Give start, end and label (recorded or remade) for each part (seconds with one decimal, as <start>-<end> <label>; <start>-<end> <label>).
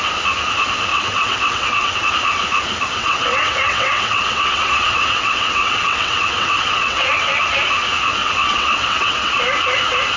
0.0-0.9 recorded; 0.9-2.1 remade; 2.1-3.0 recorded; 3.0-7.4 remade; 7.4-8.2 recorded; 8.2-9.4 remade; 9.4-10.2 recorded